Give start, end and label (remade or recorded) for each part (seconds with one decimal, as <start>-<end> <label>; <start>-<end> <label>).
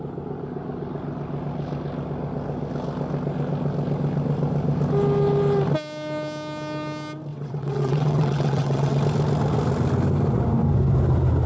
0.0-7.3 recorded; 7.3-9.0 remade; 9.0-11.5 recorded